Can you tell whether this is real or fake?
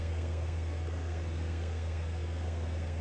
fake